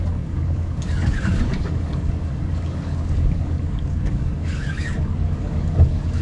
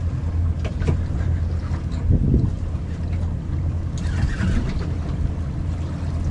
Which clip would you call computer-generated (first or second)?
first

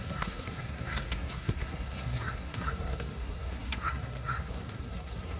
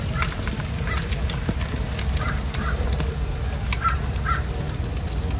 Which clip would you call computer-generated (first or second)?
first